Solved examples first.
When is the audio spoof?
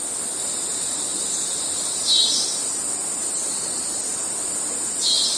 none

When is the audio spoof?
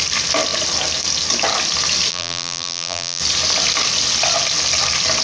2.1-3.2 (vocoder, BigVGAN v2)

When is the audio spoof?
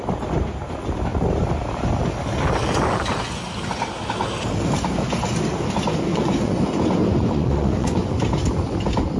6.1-6.6 (vocoder, Vocos); 7.0-8.1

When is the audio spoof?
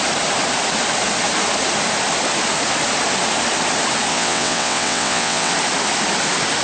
4.1-5.5 (vocoder, WaveNeXt)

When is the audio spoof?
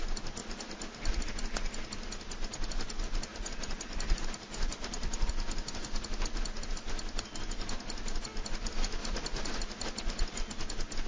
0.4-1.2 (vocoder, BigVGAN v2); 3.3-5.3; 9.0-10.4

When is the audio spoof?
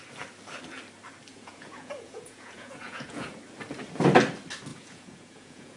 1.3-3.3 (vocoder, Vocos); 4.7-5.8